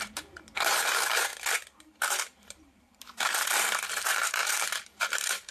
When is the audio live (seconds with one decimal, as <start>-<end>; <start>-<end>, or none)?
1.3-2.0